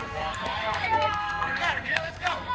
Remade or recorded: remade